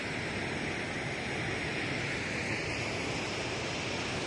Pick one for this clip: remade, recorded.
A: recorded